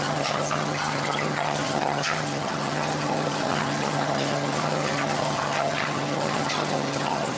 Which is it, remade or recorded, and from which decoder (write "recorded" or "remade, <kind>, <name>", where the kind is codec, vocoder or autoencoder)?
remade, vocoder, HiFi-GAN